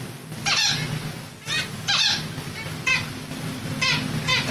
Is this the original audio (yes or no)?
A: yes